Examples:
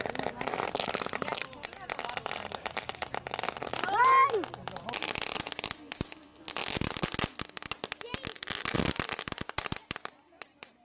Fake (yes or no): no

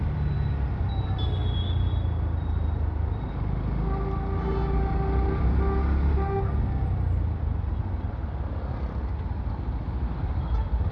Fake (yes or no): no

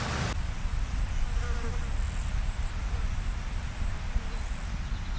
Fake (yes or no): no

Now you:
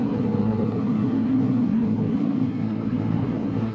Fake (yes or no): yes